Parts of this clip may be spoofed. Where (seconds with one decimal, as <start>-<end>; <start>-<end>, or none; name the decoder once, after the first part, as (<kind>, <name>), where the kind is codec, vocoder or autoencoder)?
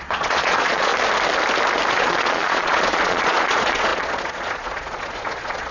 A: 0.0-0.9 (vocoder, Vocos); 1.9-5.7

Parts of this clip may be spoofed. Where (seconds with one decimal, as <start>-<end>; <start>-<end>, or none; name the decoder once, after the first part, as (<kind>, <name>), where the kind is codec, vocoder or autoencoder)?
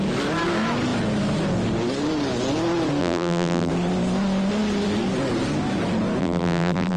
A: 3.0-3.7 (vocoder, BigVGAN v2); 6.2-7.0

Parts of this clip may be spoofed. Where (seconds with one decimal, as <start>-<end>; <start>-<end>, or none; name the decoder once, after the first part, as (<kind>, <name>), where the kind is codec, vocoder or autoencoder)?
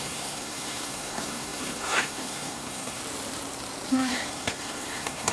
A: 0.0-3.0 (codec, SNAC); 3.9-5.3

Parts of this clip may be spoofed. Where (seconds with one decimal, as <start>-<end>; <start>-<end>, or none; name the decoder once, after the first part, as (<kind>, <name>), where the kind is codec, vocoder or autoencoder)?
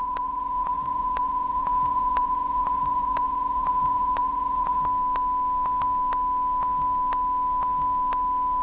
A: 0.0-4.8 (vocoder, Vocos)